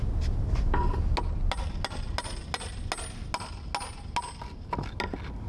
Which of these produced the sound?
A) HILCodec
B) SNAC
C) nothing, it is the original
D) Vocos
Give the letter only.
C